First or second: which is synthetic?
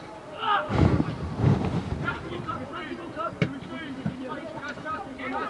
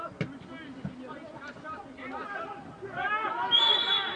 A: first